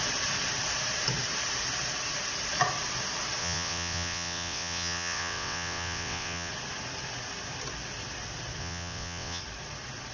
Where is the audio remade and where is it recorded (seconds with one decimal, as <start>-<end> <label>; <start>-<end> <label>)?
0.0-3.4 recorded; 3.4-6.5 remade; 6.5-8.6 recorded; 8.6-9.4 remade; 9.4-10.1 recorded